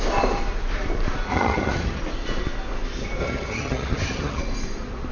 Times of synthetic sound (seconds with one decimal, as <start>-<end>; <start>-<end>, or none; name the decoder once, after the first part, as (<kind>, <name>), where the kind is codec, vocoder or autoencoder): 1.3-2.0 (vocoder, HiFi-GAN); 3.2-4.4